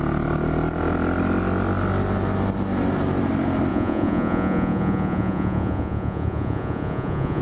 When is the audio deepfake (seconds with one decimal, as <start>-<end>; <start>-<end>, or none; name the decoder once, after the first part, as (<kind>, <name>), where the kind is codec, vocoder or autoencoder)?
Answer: 3.7-7.4 (vocoder, Vocos)